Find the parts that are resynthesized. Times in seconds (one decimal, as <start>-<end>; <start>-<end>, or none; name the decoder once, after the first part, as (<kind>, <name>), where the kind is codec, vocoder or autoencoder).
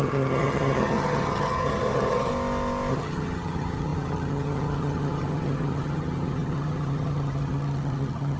0.0-2.3 (vocoder, HiFi-GAN); 2.9-8.4